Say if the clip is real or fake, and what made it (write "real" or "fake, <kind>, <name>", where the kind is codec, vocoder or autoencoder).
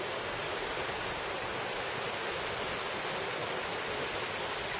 real